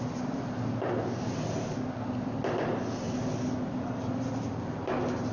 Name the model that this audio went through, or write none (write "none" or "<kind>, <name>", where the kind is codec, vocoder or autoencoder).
none